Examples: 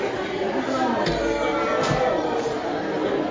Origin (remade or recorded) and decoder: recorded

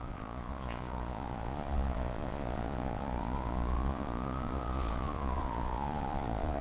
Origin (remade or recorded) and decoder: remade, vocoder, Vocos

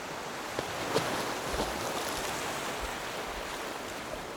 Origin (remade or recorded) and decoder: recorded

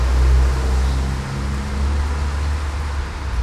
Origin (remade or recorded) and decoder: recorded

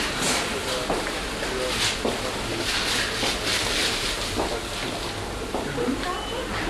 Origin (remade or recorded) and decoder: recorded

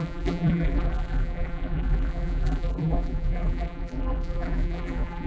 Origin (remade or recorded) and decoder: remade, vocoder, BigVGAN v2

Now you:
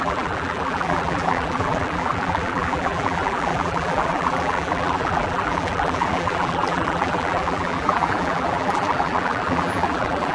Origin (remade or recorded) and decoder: remade, vocoder, BigVGAN v2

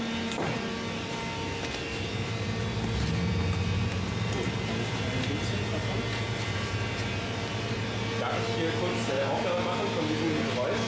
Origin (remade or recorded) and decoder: recorded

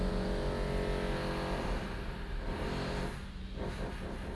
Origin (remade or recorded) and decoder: recorded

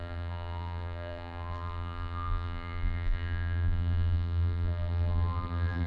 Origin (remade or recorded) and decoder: remade, vocoder, BigVGAN v2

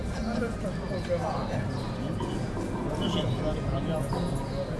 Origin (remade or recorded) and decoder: recorded